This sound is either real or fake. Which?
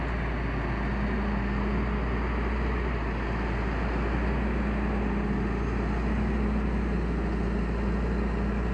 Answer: real